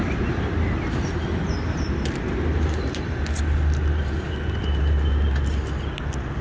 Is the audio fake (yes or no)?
no